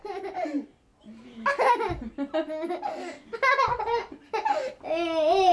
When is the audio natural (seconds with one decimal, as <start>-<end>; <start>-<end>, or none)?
0.0-5.5